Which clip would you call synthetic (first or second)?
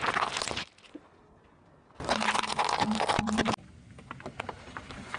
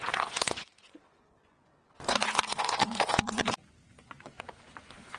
second